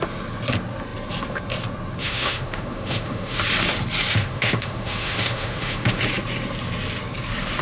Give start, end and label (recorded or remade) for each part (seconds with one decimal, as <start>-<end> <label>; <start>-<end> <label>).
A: 0.0-2.0 recorded; 2.0-3.4 remade; 3.4-4.1 recorded; 4.1-6.0 remade; 6.0-7.6 recorded